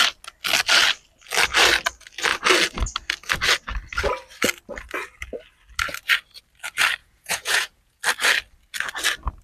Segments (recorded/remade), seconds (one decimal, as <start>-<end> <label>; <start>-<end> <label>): 0.0-7.0 recorded; 7.0-8.0 remade; 8.0-9.4 recorded